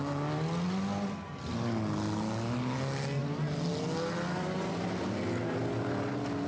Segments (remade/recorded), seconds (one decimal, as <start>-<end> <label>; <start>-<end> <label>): 0.0-6.5 recorded